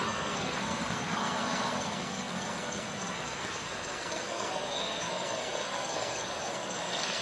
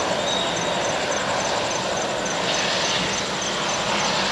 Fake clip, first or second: first